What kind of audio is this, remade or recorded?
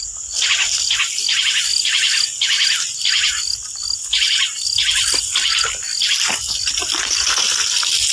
recorded